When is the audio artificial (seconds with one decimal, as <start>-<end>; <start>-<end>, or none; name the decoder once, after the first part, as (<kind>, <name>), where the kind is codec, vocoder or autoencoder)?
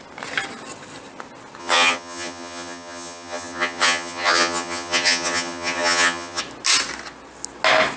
1.6-6.4 (vocoder, HiFi-GAN)